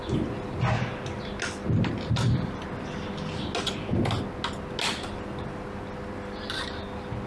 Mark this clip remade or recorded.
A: recorded